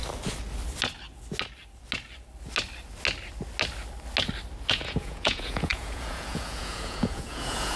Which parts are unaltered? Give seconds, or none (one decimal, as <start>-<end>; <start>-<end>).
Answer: 0.0-4.7